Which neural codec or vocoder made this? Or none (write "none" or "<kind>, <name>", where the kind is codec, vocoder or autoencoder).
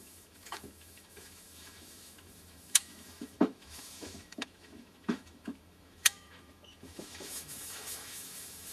autoencoder, DAC-VAE